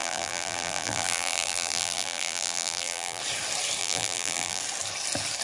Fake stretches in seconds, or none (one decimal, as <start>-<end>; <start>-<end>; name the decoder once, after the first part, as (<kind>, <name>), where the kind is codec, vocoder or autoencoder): 0.0-3.2 (vocoder, BigVGAN v2); 3.8-4.6